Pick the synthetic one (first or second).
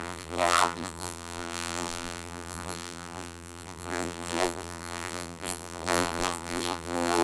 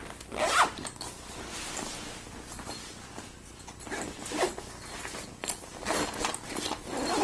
first